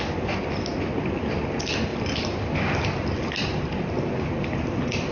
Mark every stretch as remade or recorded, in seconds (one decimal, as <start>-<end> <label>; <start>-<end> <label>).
0.0-5.1 recorded